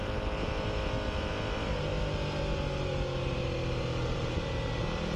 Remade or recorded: recorded